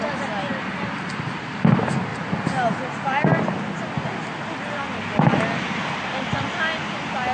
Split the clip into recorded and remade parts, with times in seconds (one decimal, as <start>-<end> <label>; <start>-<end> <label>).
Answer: 0.0-7.3 recorded